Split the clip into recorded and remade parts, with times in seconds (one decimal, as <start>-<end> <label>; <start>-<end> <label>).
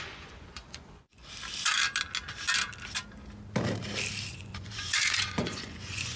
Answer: 0.0-1.2 remade; 1.2-4.3 recorded; 4.3-6.2 remade